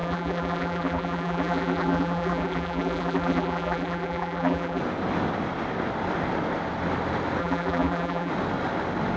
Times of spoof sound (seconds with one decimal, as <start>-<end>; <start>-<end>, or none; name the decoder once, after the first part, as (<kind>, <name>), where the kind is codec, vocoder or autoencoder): 0.0-4.8 (vocoder, BigVGAN v2); 7.4-8.3